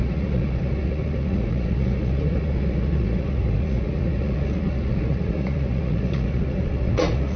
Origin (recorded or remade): remade